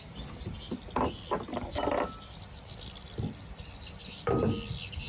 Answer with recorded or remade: recorded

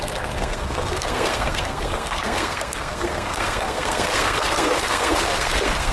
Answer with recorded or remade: remade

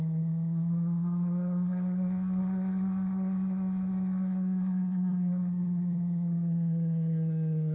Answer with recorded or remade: remade